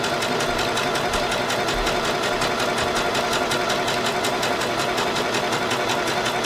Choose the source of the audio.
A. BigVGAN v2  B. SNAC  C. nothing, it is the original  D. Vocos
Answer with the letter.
C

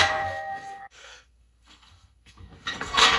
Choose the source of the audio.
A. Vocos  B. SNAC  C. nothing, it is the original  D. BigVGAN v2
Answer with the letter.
B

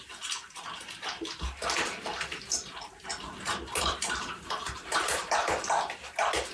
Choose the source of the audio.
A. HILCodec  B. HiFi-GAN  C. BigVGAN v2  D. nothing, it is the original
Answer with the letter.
C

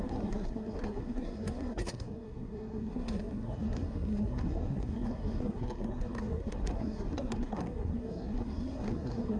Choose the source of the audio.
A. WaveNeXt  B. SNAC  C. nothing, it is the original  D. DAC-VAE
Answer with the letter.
B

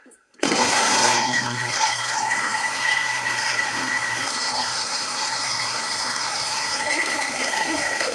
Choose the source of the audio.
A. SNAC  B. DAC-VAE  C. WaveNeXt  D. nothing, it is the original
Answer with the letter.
A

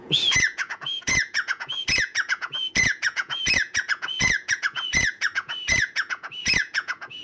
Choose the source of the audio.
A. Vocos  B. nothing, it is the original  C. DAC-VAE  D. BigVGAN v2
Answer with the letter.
A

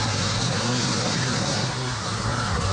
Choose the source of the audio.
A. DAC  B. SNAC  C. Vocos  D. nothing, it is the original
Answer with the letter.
B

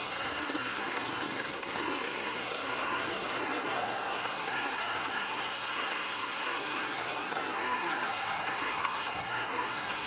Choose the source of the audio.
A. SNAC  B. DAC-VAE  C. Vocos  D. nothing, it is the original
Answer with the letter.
A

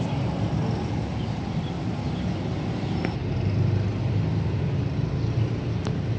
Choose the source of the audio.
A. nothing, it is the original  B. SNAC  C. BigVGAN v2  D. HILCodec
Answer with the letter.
A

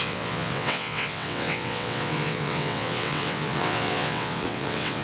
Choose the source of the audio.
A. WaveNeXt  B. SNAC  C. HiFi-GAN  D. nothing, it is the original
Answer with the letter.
A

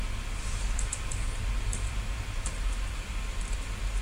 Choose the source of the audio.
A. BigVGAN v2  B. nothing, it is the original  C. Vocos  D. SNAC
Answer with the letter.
A